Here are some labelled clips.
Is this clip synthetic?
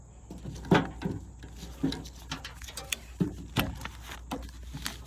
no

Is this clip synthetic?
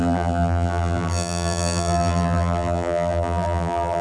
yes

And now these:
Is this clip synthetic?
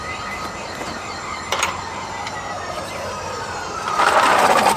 yes